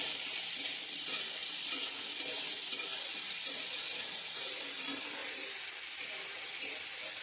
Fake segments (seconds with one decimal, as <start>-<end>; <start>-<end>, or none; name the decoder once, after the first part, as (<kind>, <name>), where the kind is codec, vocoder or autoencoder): 0.0-7.2 (vocoder, BigVGAN v2)

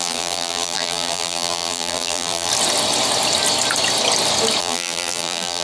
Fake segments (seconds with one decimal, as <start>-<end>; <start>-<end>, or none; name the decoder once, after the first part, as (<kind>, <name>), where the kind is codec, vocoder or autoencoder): 0.0-2.5 (vocoder, BigVGAN v2); 4.6-5.6

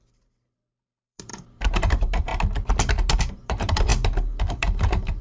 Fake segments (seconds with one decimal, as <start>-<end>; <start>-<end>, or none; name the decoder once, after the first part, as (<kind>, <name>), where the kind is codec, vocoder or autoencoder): 0.0-2.3 (vocoder, BigVGAN v2); 3.3-3.9; 4.5-5.2

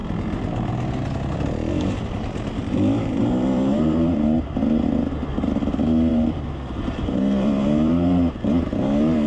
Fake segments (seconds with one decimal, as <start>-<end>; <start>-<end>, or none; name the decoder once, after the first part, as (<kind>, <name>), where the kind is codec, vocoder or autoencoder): 1.7-4.6 (vocoder, BigVGAN v2); 6.1-9.3

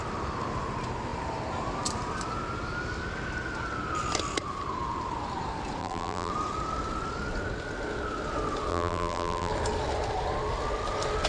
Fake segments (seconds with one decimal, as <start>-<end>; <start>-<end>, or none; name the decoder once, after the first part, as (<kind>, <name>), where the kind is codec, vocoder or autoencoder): 5.8-6.3 (vocoder, BigVGAN v2); 8.7-9.5